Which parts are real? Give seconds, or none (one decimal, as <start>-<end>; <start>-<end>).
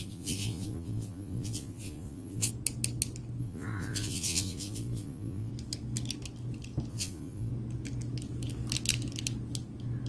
2.5-3.4; 5.5-6.9; 7.5-10.1